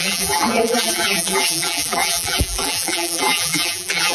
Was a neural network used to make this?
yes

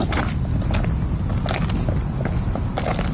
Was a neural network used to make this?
no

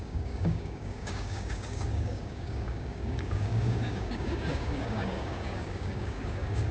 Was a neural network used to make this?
yes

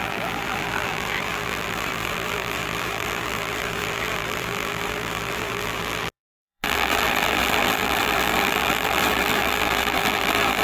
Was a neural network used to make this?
yes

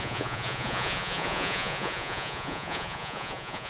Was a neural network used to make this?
yes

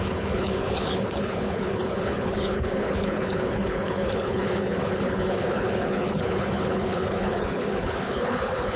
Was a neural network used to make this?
yes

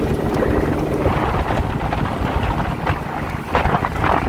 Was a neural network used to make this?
no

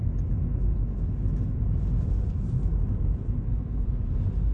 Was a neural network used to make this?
no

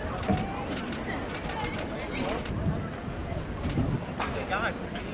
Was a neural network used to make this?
no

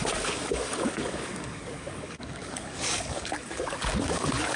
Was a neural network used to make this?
yes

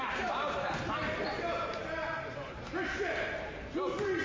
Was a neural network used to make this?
yes